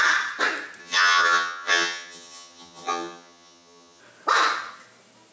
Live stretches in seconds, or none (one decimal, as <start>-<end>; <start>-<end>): 0.0-0.8; 4.0-5.3

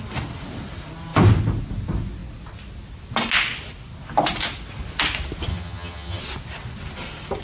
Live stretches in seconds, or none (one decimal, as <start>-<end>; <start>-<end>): 0.0-5.5; 6.2-7.4

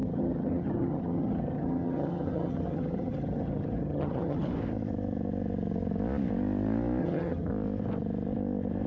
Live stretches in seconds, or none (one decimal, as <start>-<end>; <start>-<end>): 4.5-7.0; 7.5-8.9

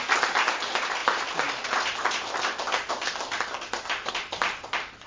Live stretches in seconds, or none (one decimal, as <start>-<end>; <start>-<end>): 0.0-5.1

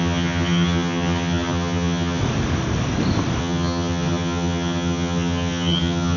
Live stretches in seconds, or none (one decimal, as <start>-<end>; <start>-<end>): 2.2-3.4

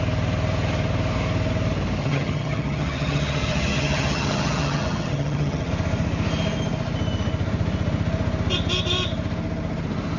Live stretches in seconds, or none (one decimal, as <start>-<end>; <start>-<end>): 0.0-2.0; 5.7-10.2

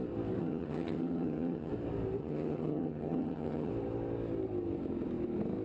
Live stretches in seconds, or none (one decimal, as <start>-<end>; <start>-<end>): 0.0-0.4; 1.7-2.2; 3.7-5.6

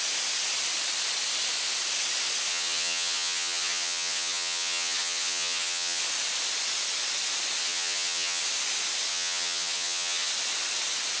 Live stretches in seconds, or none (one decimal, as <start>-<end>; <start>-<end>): 0.0-2.5; 6.0-7.6; 8.4-9.1; 10.3-11.2